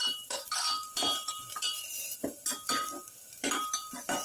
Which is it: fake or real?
fake